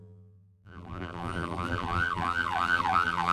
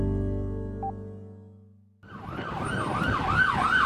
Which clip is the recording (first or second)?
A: second